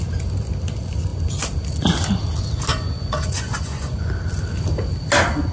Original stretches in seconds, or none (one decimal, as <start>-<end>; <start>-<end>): 0.0-2.7; 4.1-5.5